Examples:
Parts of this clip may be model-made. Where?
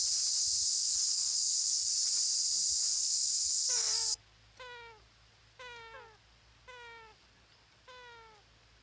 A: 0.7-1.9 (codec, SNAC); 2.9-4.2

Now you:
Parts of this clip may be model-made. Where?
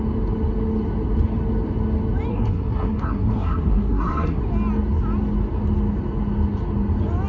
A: 2.3-4.4 (codec, SNAC)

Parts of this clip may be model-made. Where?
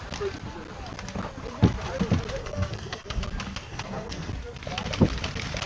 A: 2.4-3.2 (codec, SNAC); 3.7-4.3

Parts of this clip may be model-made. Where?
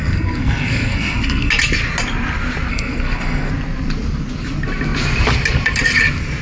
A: 0.0-1.5 (codec, SNAC); 2.7-3.5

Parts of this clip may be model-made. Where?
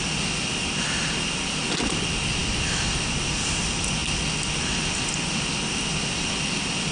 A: none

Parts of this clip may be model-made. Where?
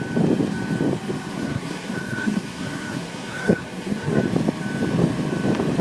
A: 1.3-4.2 (codec, SNAC)